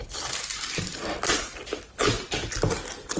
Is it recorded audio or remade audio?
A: recorded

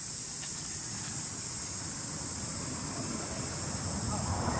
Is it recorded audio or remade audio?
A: recorded